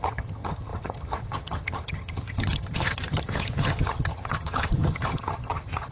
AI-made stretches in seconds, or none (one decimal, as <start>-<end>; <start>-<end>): 0.0-5.9